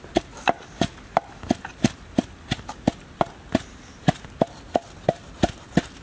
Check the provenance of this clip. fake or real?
real